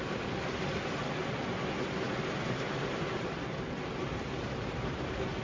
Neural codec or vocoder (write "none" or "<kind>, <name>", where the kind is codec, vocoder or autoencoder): none